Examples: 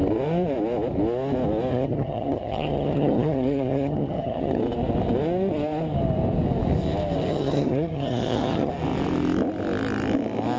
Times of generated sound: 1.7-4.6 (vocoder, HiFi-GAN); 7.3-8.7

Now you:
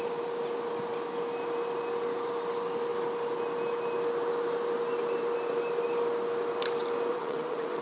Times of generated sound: 7.1-7.8 (vocoder, WaveNeXt)

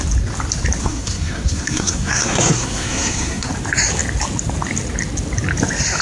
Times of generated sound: 0.8-3.5 (codec, SNAC)

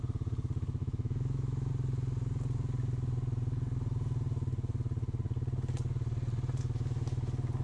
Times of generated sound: 0.8-1.7 (autoencoder, DAC-VAE)